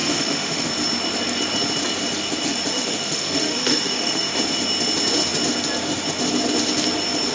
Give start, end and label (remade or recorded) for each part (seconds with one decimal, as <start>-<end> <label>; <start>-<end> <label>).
0.0-0.7 remade; 0.7-2.7 recorded; 2.7-4.3 remade; 4.3-7.3 recorded